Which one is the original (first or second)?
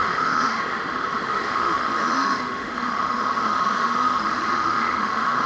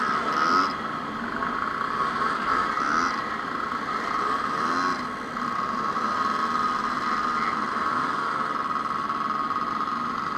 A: second